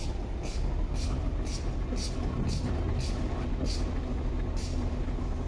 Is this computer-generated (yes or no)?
no